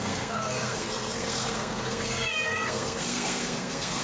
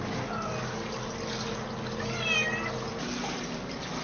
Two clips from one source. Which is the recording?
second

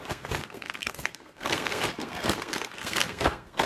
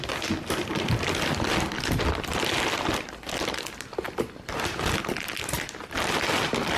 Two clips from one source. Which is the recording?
second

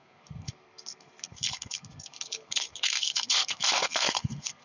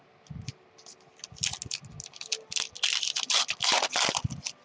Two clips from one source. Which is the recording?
second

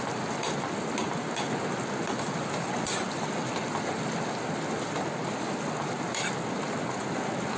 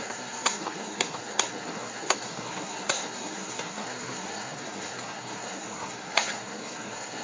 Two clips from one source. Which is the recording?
first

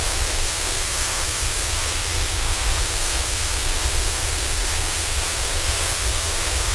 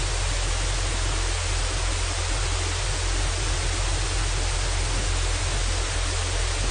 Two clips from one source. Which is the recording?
second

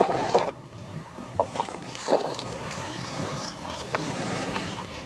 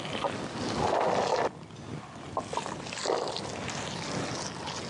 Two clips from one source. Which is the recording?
second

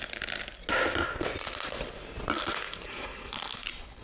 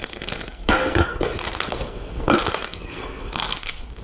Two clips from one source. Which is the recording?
first